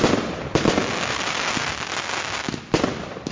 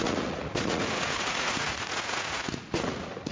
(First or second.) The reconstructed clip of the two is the second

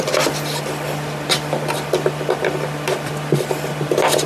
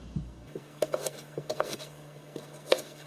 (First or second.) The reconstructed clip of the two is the second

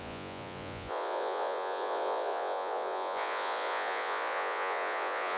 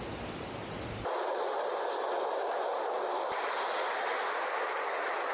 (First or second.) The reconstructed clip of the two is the first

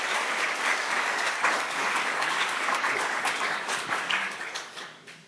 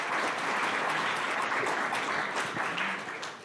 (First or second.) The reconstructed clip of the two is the first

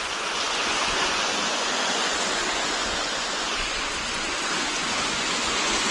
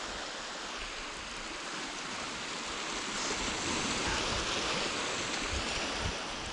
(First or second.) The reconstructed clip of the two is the first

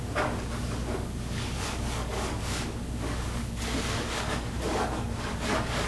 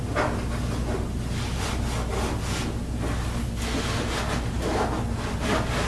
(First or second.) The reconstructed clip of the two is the first